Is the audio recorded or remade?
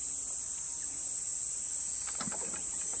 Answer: recorded